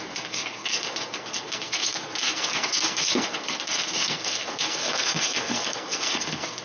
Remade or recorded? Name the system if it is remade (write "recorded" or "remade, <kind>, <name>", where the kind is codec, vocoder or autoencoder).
remade, codec, SNAC